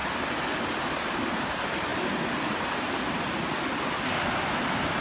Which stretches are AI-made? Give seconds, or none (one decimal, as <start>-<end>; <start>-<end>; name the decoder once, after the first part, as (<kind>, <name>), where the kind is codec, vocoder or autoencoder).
none